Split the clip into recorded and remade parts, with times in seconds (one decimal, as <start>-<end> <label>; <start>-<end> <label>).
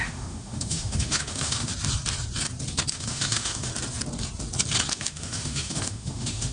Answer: 0.0-1.7 remade; 1.7-2.9 recorded; 2.9-3.7 remade; 3.7-4.9 recorded; 4.9-6.5 remade